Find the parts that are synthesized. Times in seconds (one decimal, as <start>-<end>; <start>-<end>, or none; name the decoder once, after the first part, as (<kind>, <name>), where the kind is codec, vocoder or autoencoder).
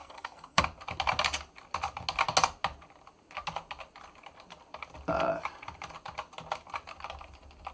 0.0-0.6 (codec, SNAC)